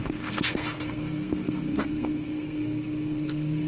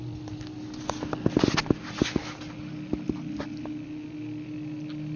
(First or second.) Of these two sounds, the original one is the second